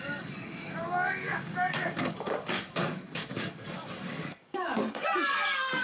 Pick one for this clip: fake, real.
fake